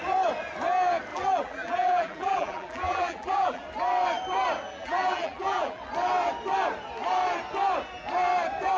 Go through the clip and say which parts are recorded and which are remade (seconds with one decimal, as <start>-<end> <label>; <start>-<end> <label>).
0.0-1.1 recorded; 1.1-3.6 remade; 3.6-4.7 recorded; 4.7-5.8 remade; 5.8-8.8 recorded